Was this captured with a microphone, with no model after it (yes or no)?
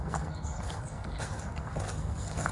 no